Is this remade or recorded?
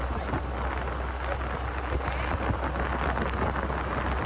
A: recorded